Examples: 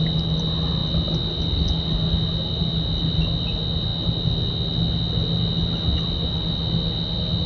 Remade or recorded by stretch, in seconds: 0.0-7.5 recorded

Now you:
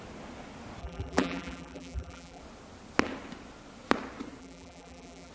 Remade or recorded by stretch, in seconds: 0.0-0.8 recorded; 0.8-2.4 remade; 2.4-4.4 recorded; 4.4-5.3 remade

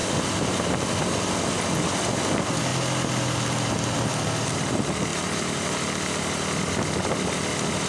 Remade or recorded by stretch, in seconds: 0.0-5.1 recorded; 5.1-6.4 remade; 6.4-7.9 recorded

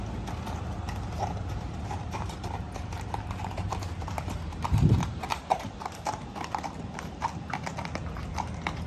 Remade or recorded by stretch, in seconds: 0.0-1.2 recorded; 1.2-6.3 remade; 6.3-8.9 recorded

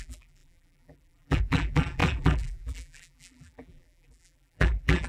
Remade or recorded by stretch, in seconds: 0.0-5.1 remade

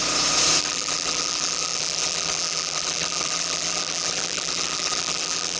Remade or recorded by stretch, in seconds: 0.0-0.6 recorded; 0.6-5.6 remade

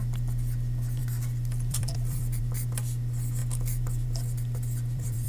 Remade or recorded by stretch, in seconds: 0.0-1.0 recorded; 1.0-2.4 remade; 2.4-3.4 recorded; 3.4-5.3 remade